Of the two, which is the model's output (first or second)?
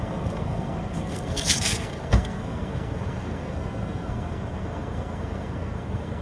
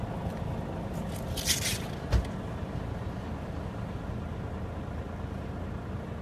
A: first